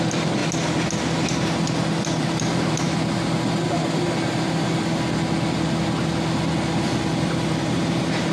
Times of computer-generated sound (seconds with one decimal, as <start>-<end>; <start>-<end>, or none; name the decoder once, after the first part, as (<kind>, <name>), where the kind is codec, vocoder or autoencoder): 0.0-0.4 (vocoder, BigVGAN v2); 2.2-3.8; 6.8-8.3

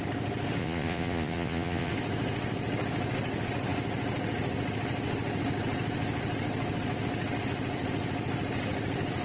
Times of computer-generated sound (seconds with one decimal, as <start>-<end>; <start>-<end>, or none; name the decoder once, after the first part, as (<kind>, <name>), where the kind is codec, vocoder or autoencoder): 0.6-1.9 (vocoder, Vocos)

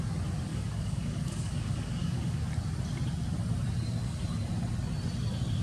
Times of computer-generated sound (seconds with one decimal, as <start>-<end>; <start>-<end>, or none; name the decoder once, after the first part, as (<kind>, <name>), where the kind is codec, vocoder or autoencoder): 0.5-2.4 (codec, DAC)

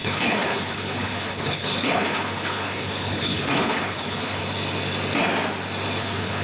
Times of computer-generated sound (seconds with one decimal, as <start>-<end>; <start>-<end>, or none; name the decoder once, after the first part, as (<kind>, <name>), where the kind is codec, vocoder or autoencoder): 0.0-4.4 (codec, HILCodec); 6.0-6.4

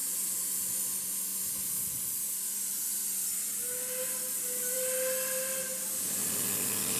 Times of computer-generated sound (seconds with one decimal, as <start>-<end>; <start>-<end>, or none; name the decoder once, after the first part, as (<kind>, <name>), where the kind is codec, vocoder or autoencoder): none

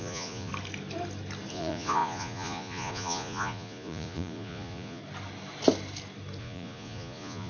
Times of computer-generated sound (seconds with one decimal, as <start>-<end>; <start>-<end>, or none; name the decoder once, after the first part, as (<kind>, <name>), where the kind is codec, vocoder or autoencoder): 0.0-0.5 (vocoder, Vocos); 1.5-5.0; 6.4-7.5

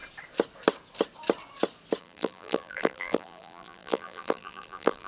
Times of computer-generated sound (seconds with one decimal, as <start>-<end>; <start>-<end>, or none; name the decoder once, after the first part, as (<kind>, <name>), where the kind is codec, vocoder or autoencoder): 2.0-5.1 (vocoder, BigVGAN v2)

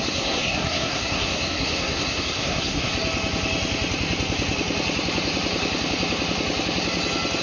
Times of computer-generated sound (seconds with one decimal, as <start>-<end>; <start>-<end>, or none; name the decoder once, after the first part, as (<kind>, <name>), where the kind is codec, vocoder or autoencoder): 0.0-2.9 (codec, SNAC)